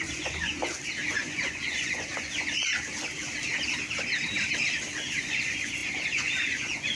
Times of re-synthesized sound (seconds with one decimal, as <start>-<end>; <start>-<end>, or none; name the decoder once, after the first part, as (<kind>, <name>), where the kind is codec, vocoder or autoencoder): 0.0-0.6 (vocoder, Vocos); 1.1-2.7; 5.2-7.0